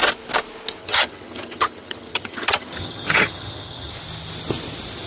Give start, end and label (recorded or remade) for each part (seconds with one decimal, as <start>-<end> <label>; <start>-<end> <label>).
0.0-0.8 recorded; 0.8-3.9 remade; 3.9-5.1 recorded

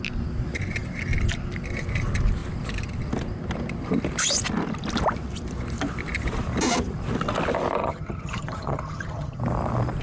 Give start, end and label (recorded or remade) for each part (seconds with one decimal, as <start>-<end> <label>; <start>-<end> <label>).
0.0-7.8 recorded; 7.8-9.4 remade; 9.4-10.0 recorded

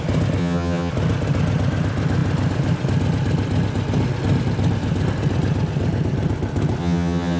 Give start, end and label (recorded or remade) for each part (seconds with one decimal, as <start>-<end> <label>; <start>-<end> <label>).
0.0-0.4 recorded; 0.4-0.9 remade; 0.9-6.8 recorded; 6.8-7.4 remade

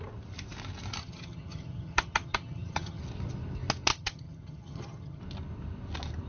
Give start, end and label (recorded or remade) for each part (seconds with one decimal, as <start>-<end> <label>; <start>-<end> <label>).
0.0-1.0 recorded; 1.0-3.0 remade; 3.0-3.9 recorded; 3.9-5.2 remade; 5.2-6.3 recorded

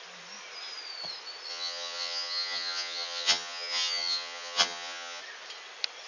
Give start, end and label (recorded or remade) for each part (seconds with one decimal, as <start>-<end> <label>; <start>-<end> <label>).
0.0-1.5 recorded; 1.5-5.2 remade; 5.2-6.1 recorded